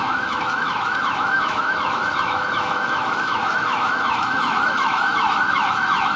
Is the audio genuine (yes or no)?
no